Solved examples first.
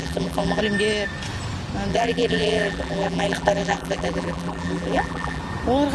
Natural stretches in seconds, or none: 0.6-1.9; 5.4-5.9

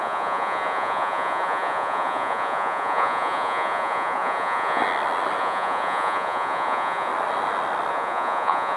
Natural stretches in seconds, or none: 4.8-5.4; 7.1-7.9

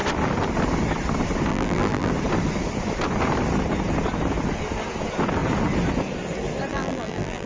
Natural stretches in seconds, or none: 0.0-1.5; 2.1-6.7

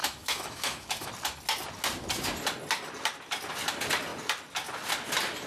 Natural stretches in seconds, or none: 1.1-5.5

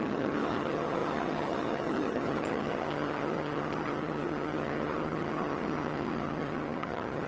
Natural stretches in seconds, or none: none

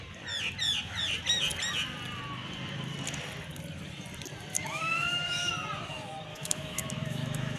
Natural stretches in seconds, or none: 0.0-4.5; 5.5-6.3

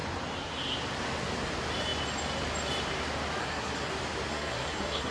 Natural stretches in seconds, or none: 0.0-3.4; 3.9-4.3

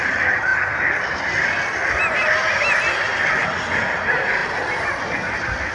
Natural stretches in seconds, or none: 0.0-5.7